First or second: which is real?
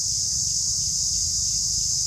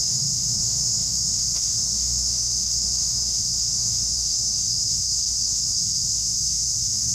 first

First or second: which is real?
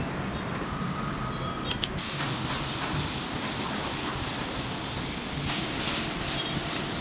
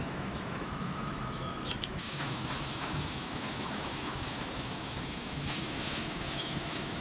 first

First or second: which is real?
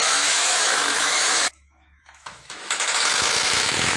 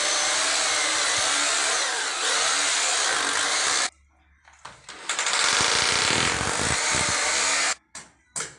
second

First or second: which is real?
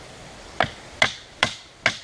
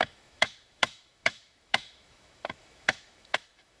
first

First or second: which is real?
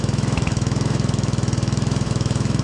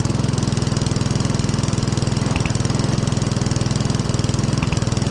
second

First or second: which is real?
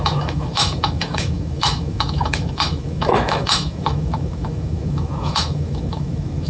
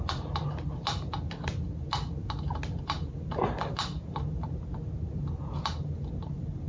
second